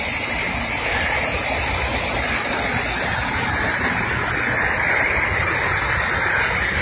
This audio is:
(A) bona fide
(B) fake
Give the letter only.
A